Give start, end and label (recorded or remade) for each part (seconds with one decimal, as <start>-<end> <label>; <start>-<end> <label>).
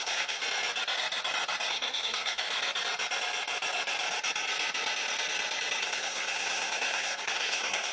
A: 0.0-0.4 remade; 0.4-1.7 recorded; 1.7-2.4 remade; 2.4-5.8 recorded; 5.8-7.9 remade